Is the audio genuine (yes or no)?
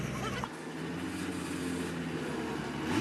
yes